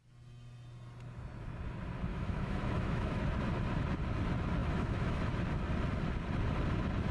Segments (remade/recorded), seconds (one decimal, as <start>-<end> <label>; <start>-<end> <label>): 0.0-2.1 recorded; 2.1-3.2 remade; 3.2-4.6 recorded; 4.6-5.2 remade; 5.2-7.1 recorded